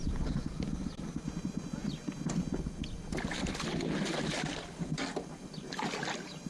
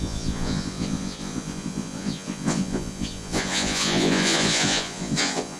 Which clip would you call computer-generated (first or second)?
second